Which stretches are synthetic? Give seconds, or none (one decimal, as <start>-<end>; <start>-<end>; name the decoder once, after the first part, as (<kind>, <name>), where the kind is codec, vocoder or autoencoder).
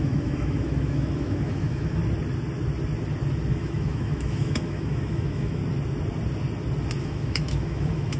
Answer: 0.0-2.0 (autoencoder, DAC-VAE); 3.5-5.6; 7.0-8.2